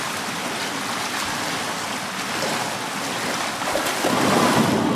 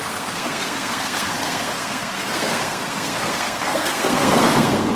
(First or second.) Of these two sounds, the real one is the first